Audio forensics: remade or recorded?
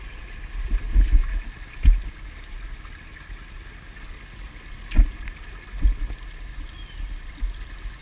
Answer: recorded